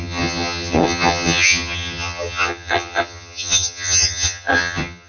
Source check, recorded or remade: remade